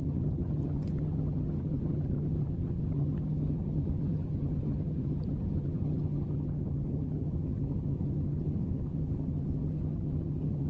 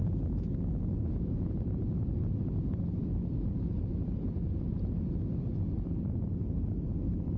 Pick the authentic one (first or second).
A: second